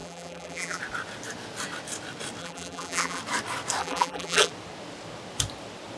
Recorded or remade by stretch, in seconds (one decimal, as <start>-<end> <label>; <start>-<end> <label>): 0.0-0.8 remade; 0.8-2.4 recorded; 2.4-3.2 remade; 3.2-3.8 recorded; 3.8-4.5 remade; 4.5-6.0 recorded